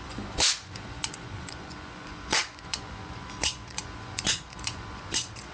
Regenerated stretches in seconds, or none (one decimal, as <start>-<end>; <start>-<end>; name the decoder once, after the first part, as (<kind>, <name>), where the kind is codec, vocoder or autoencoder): 0.0-5.5 (vocoder, Vocos)